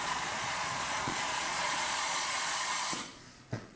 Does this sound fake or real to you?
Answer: fake